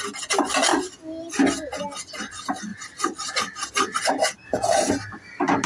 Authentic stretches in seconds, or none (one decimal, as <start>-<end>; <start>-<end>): 0.0-2.7; 4.9-5.7